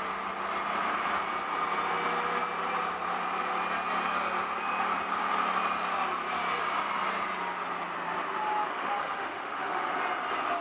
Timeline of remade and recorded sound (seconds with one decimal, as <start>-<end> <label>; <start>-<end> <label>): 0.0-8.7 recorded; 8.7-9.9 remade; 9.9-10.6 recorded